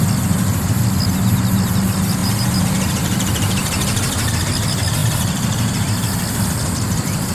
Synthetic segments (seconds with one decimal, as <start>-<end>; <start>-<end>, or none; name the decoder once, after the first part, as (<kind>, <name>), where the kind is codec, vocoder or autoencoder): 2.2-4.4 (vocoder, BigVGAN v2); 5.0-5.8